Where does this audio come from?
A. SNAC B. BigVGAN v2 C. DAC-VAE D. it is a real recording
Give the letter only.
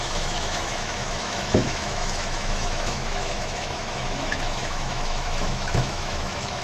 C